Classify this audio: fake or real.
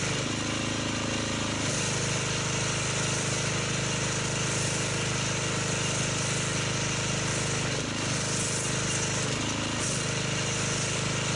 real